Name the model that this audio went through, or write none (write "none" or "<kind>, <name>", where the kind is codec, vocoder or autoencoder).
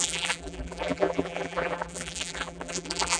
vocoder, BigVGAN v2